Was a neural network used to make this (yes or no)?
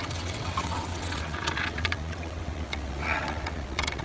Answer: yes